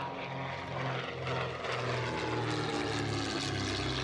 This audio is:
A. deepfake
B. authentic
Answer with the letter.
B